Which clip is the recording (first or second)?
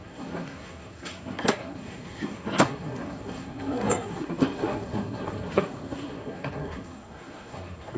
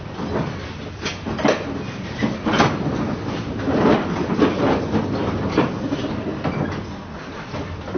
second